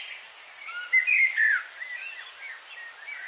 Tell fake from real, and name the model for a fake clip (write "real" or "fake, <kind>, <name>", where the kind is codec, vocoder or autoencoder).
real